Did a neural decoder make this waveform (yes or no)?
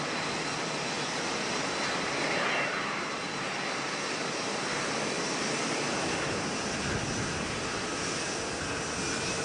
no